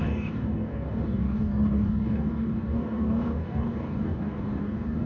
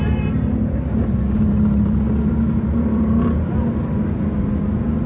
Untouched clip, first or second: second